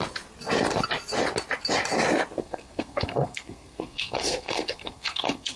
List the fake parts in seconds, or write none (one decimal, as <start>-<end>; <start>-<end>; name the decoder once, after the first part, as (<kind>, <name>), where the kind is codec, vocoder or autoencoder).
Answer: 2.4-5.6 (codec, SNAC)